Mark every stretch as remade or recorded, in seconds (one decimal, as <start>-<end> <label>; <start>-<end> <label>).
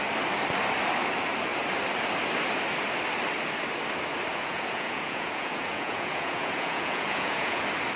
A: 0.0-4.3 recorded; 4.3-7.6 remade; 7.6-8.0 recorded